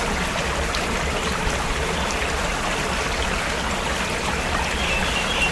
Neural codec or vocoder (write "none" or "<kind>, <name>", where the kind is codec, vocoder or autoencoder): none